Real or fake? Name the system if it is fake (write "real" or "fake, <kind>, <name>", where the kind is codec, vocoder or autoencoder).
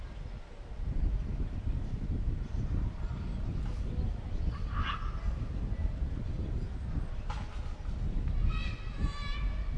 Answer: real